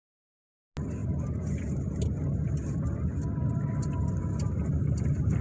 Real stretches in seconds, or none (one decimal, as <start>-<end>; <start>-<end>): 0.0-5.4